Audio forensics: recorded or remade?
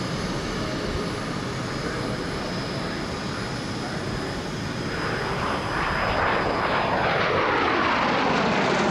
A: recorded